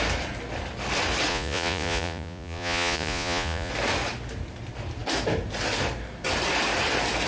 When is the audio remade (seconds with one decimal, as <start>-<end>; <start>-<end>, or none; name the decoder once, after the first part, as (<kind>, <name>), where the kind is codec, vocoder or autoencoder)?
1.3-3.7 (vocoder, Vocos)